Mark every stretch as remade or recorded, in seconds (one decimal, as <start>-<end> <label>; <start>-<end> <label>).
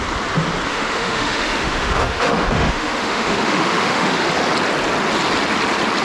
0.0-0.7 recorded; 0.7-4.3 remade; 4.3-6.0 recorded